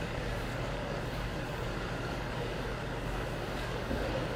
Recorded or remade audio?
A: remade